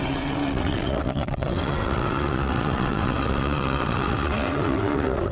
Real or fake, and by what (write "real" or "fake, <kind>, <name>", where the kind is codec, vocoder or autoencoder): fake, vocoder, WaveNeXt